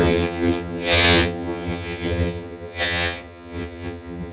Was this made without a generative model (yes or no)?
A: no